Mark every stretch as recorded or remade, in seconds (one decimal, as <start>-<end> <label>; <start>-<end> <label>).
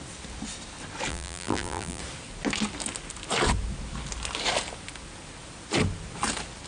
0.0-1.1 recorded; 1.1-2.0 remade; 2.0-6.7 recorded